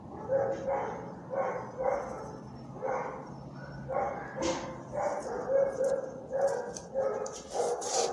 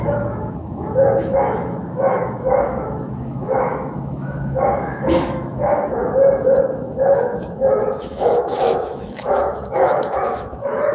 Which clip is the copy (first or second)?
second